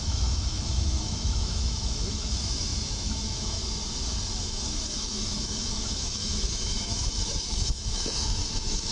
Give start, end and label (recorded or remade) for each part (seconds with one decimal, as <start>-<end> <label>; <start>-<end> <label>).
0.0-3.6 remade; 3.6-4.4 recorded; 4.4-8.9 remade